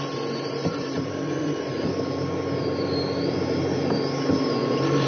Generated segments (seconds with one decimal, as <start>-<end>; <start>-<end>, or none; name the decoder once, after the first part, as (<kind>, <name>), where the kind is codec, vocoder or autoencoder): 0.6-2.0 (vocoder, BigVGAN v2)